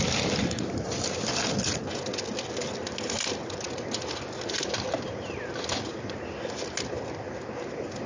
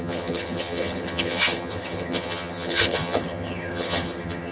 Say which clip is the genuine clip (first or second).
first